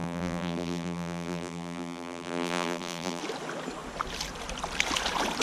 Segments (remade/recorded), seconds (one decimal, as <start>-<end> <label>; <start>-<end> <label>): 0.0-3.2 remade; 3.2-5.4 recorded

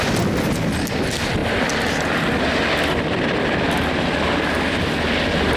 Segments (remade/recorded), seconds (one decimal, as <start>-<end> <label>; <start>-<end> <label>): 0.0-5.6 recorded

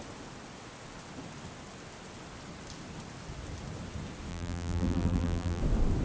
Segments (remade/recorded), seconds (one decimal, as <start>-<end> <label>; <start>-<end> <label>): 0.0-4.3 recorded; 4.3-5.6 remade; 5.6-6.0 recorded